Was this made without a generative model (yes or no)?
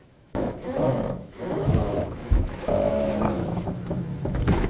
no